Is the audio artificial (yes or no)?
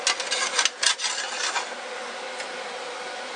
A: no